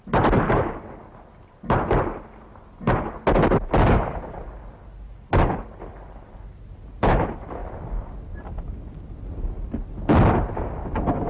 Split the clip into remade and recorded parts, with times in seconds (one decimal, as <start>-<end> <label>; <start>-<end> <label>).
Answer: 0.0-11.3 recorded